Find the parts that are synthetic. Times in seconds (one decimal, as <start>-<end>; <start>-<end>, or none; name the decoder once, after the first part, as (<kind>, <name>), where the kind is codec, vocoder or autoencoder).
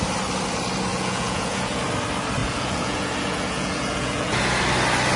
0.9-1.8 (vocoder, Vocos); 2.4-4.6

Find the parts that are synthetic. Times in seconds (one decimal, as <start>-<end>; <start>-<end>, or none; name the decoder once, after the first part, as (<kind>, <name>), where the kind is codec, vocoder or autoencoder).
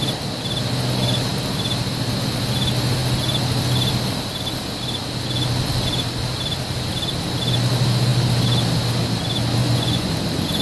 9.6-10.1 (vocoder, Vocos)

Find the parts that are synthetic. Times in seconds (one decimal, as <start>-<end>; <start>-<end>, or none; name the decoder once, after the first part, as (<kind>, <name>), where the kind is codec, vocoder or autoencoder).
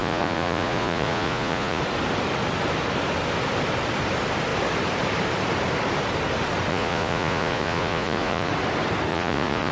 0.0-1.8 (vocoder, Vocos); 6.7-8.5; 9.1-9.7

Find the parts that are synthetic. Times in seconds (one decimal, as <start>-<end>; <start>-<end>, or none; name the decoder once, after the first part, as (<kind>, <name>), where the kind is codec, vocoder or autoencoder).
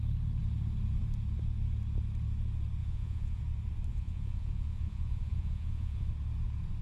2.8-3.4 (vocoder, Vocos); 3.9-6.1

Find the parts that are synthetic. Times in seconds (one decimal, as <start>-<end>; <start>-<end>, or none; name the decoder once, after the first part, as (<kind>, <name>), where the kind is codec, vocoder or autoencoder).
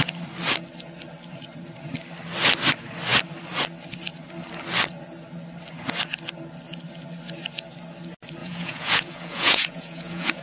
8.4-10.4 (vocoder, Vocos)